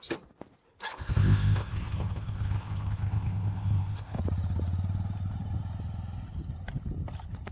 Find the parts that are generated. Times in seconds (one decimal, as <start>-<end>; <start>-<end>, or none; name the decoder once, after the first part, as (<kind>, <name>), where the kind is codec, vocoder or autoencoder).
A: 0.9-4.2 (codec, ZipCodec)